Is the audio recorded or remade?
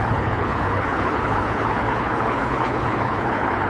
remade